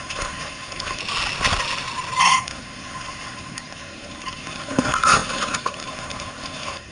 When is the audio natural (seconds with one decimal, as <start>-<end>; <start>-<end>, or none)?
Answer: 1.0-2.2